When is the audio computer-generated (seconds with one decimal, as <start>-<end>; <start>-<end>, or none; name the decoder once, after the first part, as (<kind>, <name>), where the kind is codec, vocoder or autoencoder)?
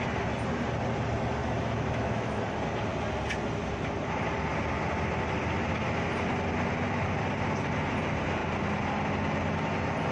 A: 1.4-2.4 (autoencoder, DAC-VAE)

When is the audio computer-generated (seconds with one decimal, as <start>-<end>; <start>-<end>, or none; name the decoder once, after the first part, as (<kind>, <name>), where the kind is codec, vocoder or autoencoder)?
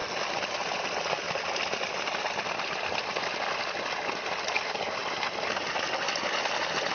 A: none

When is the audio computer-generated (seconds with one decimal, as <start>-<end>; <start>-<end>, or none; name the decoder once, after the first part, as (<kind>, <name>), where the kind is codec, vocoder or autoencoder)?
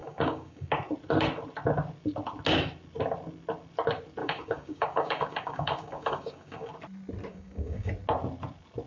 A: 0.0-0.7 (codec, DAC); 4.2-6.7; 7.3-7.9